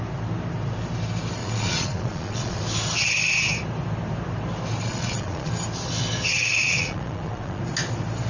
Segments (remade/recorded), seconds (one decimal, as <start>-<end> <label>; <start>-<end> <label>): 0.0-1.4 recorded; 1.4-2.6 remade; 2.6-4.8 recorded; 4.8-5.5 remade; 5.5-6.6 recorded; 6.6-7.6 remade; 7.6-8.3 recorded

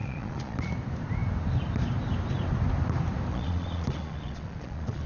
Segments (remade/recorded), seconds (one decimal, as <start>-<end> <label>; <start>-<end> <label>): 0.0-0.7 remade; 0.7-3.3 recorded; 3.3-5.1 remade

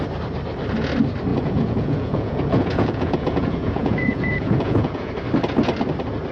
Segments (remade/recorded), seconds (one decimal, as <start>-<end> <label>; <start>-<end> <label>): 0.0-1.3 recorded; 1.3-5.1 remade; 5.1-6.3 recorded

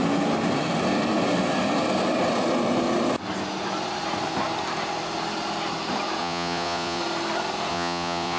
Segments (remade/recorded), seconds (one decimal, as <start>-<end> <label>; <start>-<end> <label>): 0.0-6.2 recorded; 6.2-7.0 remade; 7.0-7.7 recorded; 7.7-8.4 remade

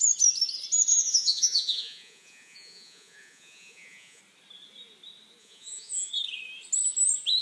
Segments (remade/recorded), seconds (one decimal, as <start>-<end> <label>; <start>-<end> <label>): 0.0-0.9 recorded; 0.9-4.2 remade; 4.2-5.4 recorded; 5.4-6.1 remade; 6.1-7.4 recorded

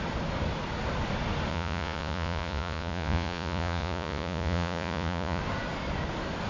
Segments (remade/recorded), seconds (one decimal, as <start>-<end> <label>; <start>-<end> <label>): 0.0-1.5 recorded; 1.5-5.4 remade; 5.4-6.5 recorded

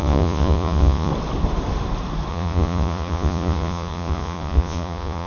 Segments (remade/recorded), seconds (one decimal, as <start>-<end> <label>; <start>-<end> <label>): 0.0-1.1 remade; 1.1-2.3 recorded; 2.3-5.3 remade